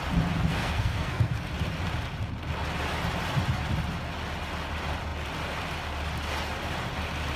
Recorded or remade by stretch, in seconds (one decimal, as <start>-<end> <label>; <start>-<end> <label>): 0.0-0.5 recorded; 0.5-1.5 remade; 1.5-7.4 recorded